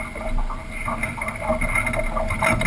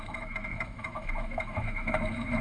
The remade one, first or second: second